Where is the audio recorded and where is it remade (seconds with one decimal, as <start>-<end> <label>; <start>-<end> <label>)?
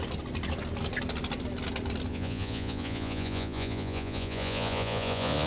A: 0.0-2.1 recorded; 2.1-5.5 remade